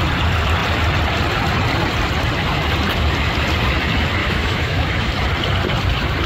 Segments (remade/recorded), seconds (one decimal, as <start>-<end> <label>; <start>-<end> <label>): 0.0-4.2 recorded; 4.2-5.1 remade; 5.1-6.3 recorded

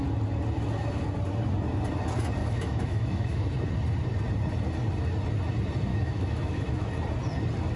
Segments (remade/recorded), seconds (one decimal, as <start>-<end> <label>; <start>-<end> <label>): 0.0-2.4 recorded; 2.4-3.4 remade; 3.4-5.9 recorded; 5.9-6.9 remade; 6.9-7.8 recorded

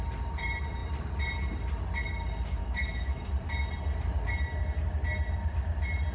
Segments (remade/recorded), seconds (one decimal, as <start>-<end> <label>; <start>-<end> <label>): 0.0-2.6 recorded; 2.6-3.3 remade; 3.3-6.1 recorded

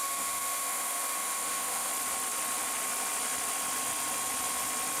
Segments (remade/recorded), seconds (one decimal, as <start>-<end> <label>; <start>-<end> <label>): 0.0-1.9 remade; 1.9-5.0 recorded